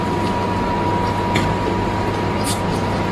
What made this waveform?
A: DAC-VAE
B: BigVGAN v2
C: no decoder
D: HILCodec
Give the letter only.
C